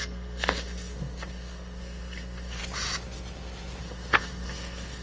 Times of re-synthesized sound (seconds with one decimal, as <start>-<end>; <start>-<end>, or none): 0.0-2.6; 3.8-5.0

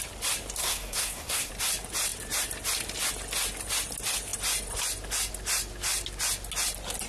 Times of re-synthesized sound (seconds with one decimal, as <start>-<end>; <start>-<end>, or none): 0.6-1.5

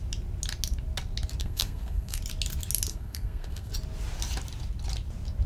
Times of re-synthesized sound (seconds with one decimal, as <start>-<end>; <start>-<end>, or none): 1.4-2.2; 2.9-3.7

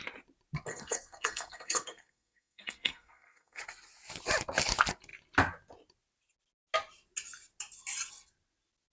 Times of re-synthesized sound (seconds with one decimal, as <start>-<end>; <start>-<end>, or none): 0.7-3.6